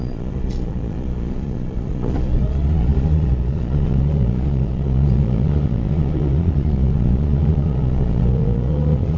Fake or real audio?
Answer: fake